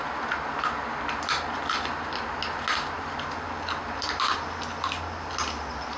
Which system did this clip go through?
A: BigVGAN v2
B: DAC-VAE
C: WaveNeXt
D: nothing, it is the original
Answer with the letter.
D